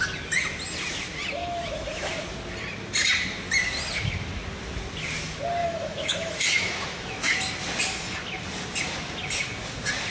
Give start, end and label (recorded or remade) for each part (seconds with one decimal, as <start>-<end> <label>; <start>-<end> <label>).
0.0-1.4 recorded; 1.4-2.1 remade; 2.1-5.6 recorded; 5.6-7.4 remade; 7.4-10.1 recorded